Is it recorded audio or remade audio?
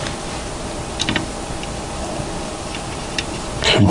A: recorded